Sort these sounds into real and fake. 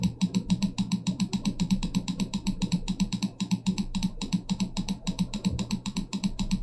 fake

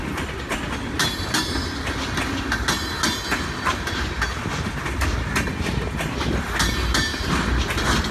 real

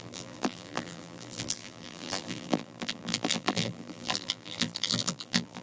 fake